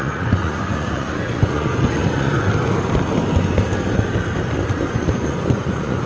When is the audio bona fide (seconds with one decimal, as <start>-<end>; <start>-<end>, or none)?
2.5-4.9

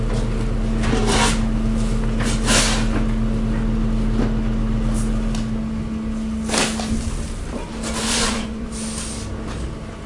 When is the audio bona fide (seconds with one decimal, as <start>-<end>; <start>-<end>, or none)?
0.0-8.0; 8.7-10.1

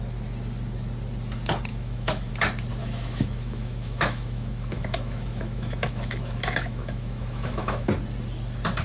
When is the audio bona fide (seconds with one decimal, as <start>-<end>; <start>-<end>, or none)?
0.0-1.7; 2.3-2.8; 7.9-8.8